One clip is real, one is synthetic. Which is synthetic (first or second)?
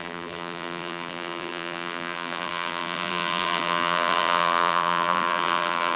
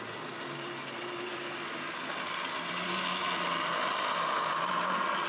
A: first